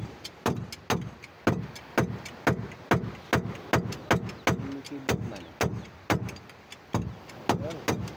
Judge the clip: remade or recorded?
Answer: recorded